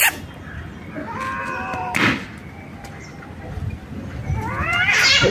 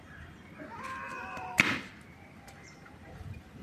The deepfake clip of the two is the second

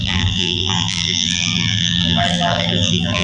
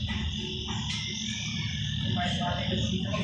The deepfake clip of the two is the first